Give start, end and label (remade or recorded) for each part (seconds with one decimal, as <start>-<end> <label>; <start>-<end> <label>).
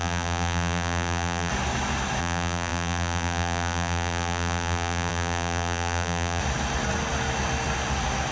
0.0-1.5 remade; 1.5-2.2 recorded; 2.2-6.4 remade; 6.4-8.3 recorded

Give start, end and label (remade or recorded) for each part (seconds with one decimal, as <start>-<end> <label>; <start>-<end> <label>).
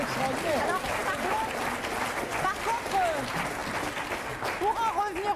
0.0-1.0 recorded; 1.0-2.6 remade; 2.6-3.6 recorded; 3.6-4.6 remade; 4.6-5.4 recorded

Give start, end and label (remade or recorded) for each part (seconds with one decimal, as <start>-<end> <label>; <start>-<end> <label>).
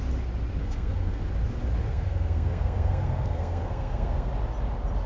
0.0-0.6 recorded; 0.6-1.2 remade; 1.2-1.9 recorded; 1.9-4.3 remade; 4.3-5.1 recorded